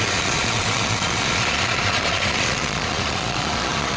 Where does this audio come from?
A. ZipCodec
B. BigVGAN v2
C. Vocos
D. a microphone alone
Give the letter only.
C